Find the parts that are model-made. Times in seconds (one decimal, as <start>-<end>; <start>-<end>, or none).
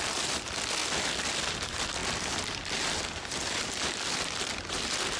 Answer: 0.0-5.2